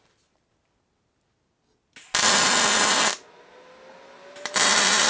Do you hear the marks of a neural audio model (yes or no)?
no